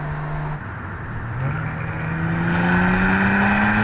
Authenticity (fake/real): real